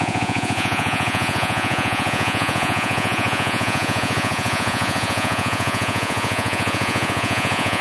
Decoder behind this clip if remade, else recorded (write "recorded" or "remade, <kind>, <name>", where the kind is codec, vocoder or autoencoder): remade, vocoder, Vocos